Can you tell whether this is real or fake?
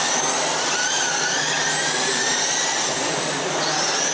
real